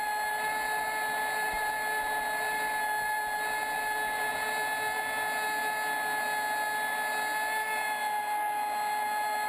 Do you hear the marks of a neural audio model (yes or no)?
no